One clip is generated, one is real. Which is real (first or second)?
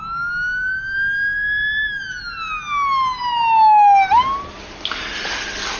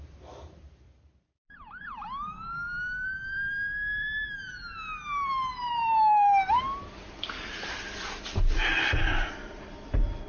first